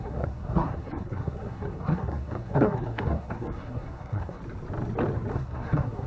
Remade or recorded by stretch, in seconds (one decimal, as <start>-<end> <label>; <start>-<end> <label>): 0.0-4.4 remade; 4.4-5.3 recorded; 5.3-6.1 remade